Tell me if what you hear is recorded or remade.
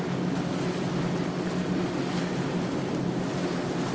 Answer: recorded